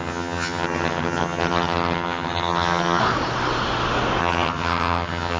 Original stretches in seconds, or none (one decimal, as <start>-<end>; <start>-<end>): 3.0-4.2

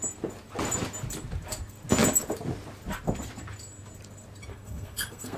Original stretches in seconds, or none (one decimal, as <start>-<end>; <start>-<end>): 0.0-4.5